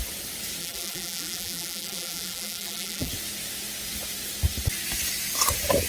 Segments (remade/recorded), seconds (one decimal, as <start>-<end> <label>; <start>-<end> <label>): 0.0-0.6 recorded; 0.6-3.1 remade; 3.1-5.9 recorded

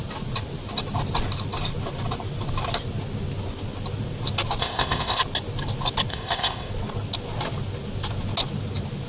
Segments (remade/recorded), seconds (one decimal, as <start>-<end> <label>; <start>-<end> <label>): 0.0-4.6 recorded; 4.6-5.2 remade; 5.2-6.1 recorded; 6.1-6.7 remade; 6.7-9.1 recorded

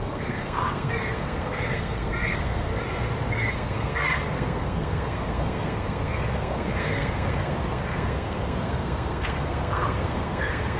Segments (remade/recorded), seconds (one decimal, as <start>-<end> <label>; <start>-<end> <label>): 0.0-2.7 remade; 2.7-3.3 recorded; 3.3-10.8 remade

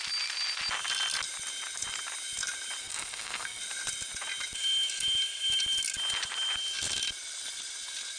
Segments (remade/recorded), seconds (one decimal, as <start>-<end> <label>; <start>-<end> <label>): 0.0-2.8 recorded; 2.8-3.6 remade; 3.6-8.2 recorded

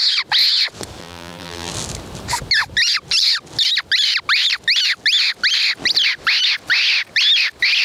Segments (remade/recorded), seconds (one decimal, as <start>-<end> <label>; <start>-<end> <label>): 0.0-1.0 recorded; 1.0-1.7 remade; 1.7-7.8 recorded

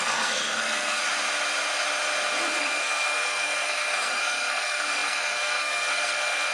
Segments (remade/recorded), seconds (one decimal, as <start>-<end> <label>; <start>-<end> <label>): 0.0-1.0 remade; 1.0-2.6 recorded; 2.6-6.5 remade